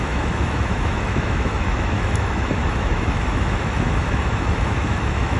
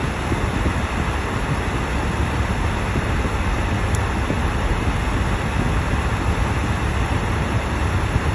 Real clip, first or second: second